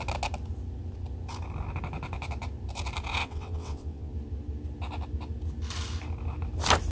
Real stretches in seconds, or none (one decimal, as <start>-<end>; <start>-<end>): 0.0-3.2; 4.1-6.9